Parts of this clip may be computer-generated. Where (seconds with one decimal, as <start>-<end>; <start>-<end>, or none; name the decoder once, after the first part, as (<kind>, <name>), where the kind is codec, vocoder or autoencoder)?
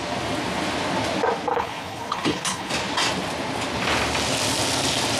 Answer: 1.5-2.7 (codec, HILCodec)